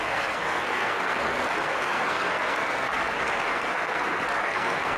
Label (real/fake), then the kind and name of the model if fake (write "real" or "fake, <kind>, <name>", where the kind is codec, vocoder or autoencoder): fake, codec, SNAC